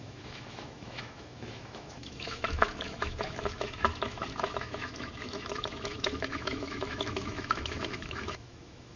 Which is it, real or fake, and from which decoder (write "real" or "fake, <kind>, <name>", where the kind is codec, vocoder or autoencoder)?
fake, autoencoder, DAC-VAE